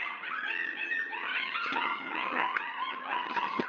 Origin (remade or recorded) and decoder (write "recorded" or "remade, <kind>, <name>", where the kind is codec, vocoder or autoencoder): remade, vocoder, HiFi-GAN